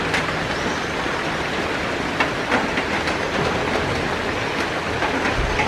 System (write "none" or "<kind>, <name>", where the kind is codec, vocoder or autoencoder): none